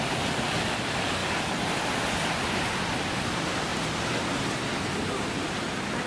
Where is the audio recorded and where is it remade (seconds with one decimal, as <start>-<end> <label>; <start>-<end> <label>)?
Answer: 0.0-3.7 remade; 3.7-6.1 recorded